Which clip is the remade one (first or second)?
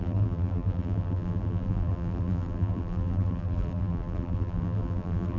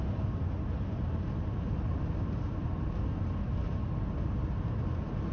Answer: first